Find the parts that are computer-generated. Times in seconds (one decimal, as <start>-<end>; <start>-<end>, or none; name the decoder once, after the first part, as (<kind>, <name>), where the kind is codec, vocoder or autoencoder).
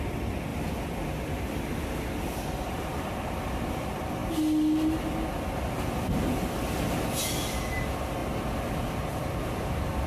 0.5-3.5 (vocoder, BigVGAN v2)